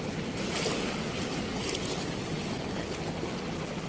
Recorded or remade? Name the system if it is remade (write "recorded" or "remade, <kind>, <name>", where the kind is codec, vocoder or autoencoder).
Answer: recorded